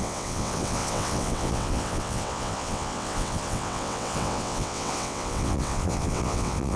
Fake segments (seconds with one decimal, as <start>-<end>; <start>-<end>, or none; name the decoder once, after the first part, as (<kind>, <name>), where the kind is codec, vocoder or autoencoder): 0.0-6.8 (vocoder, WaveNeXt)